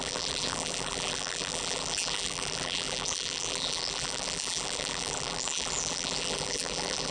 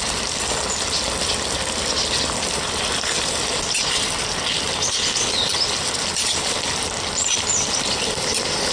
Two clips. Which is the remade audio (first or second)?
first